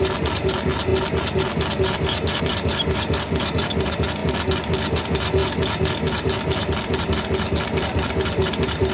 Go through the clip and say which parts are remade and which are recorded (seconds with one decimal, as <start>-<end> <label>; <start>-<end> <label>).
0.0-8.9 recorded